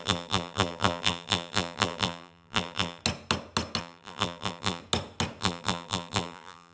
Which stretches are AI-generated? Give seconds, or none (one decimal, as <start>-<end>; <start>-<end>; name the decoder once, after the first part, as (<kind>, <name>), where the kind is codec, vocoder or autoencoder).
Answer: 0.0-3.0 (vocoder, BigVGAN v2); 3.8-4.8; 5.4-6.7